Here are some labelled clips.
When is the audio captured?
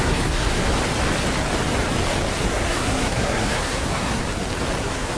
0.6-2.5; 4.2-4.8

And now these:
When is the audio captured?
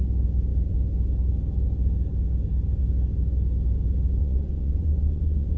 0.0-4.2